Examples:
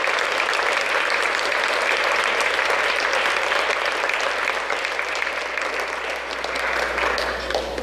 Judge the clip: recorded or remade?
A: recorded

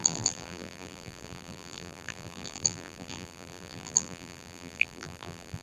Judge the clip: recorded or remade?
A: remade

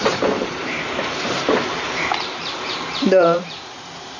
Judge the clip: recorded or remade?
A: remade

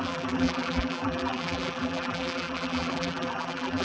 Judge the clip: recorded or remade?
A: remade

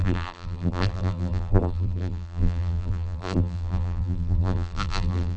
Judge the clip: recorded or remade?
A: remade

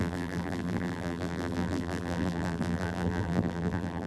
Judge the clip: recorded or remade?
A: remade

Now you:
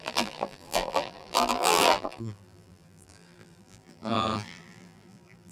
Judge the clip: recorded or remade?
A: remade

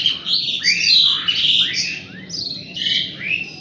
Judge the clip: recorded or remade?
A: recorded